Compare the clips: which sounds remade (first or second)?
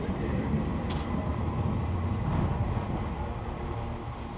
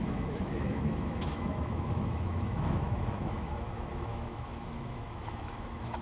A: second